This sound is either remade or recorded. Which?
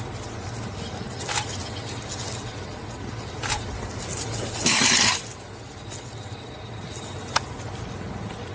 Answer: recorded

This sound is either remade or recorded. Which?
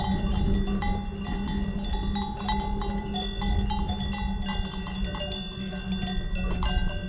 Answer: recorded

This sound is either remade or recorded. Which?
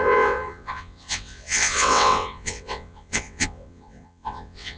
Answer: remade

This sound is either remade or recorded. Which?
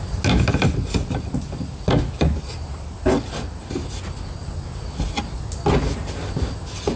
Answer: recorded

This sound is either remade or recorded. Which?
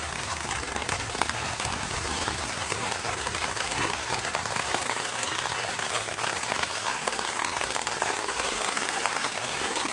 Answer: remade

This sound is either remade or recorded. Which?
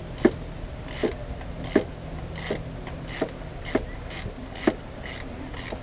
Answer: recorded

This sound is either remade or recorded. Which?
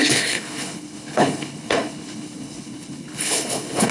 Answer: remade